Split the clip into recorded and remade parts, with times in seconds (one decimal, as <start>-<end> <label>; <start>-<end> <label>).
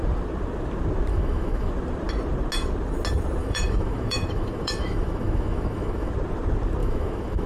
0.0-1.1 recorded; 1.1-1.7 remade; 1.7-3.4 recorded; 3.4-6.1 remade; 6.1-6.8 recorded; 6.8-7.5 remade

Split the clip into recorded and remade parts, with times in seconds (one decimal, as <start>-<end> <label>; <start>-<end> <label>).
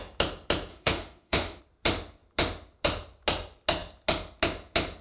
0.0-0.7 recorded; 0.7-1.6 remade; 1.6-5.0 recorded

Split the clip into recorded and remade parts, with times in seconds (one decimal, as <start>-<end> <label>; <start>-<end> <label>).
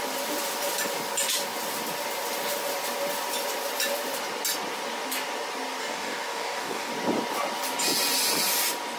0.0-5.8 recorded; 5.8-6.9 remade; 6.9-9.0 recorded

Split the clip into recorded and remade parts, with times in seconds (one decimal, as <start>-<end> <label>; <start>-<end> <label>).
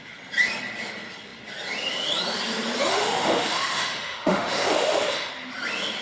0.0-2.9 recorded; 2.9-5.3 remade; 5.3-6.0 recorded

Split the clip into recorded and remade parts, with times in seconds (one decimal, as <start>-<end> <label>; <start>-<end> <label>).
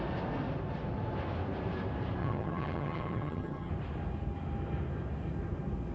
0.0-2.2 recorded; 2.2-3.7 remade; 3.7-5.9 recorded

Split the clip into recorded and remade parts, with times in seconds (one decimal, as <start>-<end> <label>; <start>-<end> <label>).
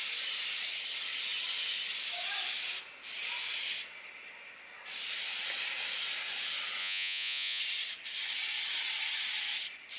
0.0-6.8 recorded; 6.8-7.6 remade; 7.6-10.0 recorded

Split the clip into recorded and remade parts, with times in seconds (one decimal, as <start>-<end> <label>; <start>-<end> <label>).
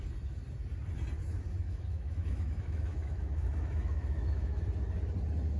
0.0-1.2 recorded; 1.2-4.6 remade; 4.6-5.6 recorded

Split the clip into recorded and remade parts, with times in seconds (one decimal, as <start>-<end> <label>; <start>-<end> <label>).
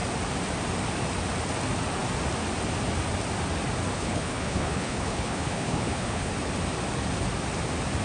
0.0-3.9 recorded; 3.9-6.3 remade; 6.3-8.0 recorded